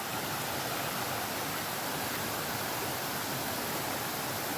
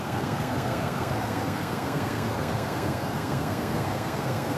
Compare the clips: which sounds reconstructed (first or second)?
second